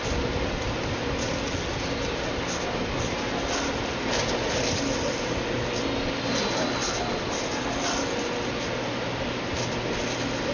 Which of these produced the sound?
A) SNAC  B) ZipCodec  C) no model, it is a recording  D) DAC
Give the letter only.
C